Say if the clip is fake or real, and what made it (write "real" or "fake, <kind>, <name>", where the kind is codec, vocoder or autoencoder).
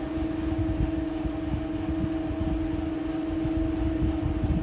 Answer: real